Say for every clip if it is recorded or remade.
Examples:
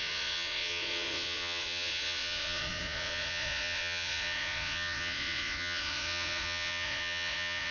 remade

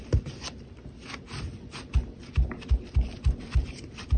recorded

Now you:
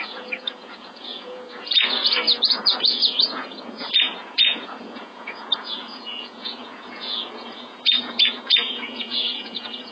remade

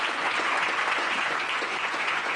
remade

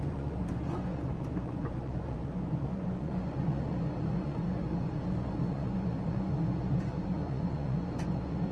remade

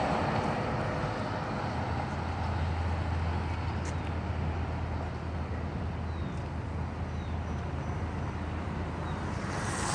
recorded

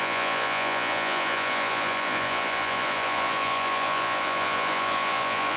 remade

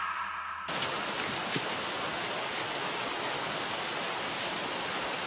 recorded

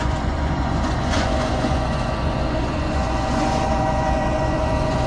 remade